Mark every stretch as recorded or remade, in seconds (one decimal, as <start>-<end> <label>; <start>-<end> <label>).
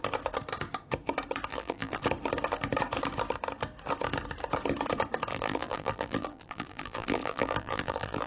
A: 0.0-1.5 recorded; 1.5-2.0 remade; 2.0-5.3 recorded; 5.3-8.3 remade